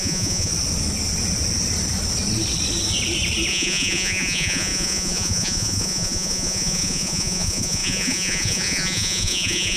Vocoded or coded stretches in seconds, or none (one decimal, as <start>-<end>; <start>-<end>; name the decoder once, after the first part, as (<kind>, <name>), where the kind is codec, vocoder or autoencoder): 0.0-0.5 (vocoder, Vocos); 3.5-9.8